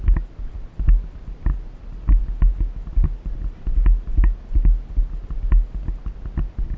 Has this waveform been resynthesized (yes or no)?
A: no